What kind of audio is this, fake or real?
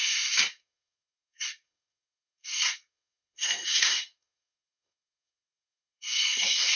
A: fake